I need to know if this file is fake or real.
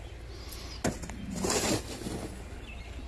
real